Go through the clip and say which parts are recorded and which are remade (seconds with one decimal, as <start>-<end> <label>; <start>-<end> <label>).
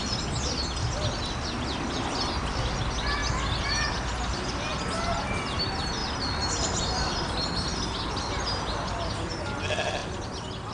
0.0-10.7 recorded